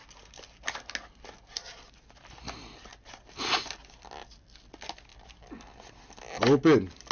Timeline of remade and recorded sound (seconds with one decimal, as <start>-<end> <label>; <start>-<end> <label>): 0.0-7.1 recorded